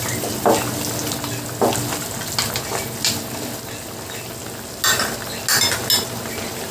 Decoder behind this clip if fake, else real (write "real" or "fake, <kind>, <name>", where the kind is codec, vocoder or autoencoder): real